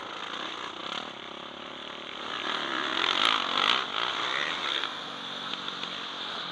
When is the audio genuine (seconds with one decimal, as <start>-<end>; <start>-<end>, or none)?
0.0-4.7; 5.5-6.5